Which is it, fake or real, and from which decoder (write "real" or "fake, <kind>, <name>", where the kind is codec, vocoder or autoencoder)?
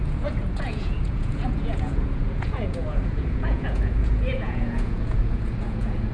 fake, vocoder, Vocos